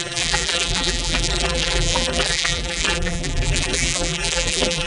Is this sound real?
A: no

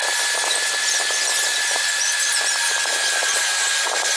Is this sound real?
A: yes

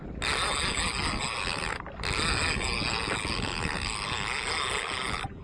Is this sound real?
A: yes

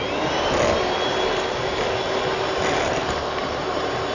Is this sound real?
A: yes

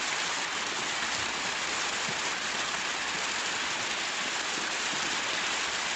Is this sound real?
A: yes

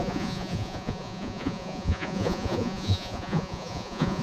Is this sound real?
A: no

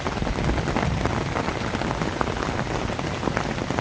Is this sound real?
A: yes